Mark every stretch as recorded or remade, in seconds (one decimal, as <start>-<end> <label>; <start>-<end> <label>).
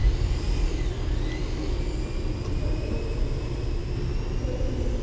0.0-5.0 recorded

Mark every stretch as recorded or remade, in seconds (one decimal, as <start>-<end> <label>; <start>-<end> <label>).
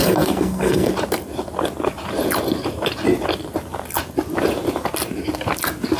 0.0-0.9 remade; 0.9-6.0 recorded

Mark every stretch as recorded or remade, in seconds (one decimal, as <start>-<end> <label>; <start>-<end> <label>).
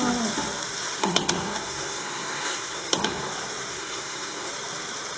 0.0-1.0 recorded; 1.0-3.3 remade; 3.3-3.7 recorded; 3.7-4.5 remade; 4.5-5.2 recorded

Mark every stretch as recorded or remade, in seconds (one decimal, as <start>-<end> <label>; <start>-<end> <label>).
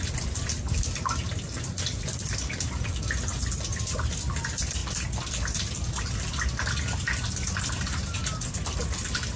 0.0-9.4 recorded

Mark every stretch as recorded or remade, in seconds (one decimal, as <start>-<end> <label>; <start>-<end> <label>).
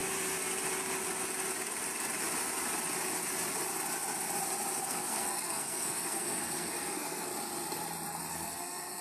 0.0-4.8 recorded; 4.8-7.3 remade; 7.3-8.3 recorded; 8.3-9.0 remade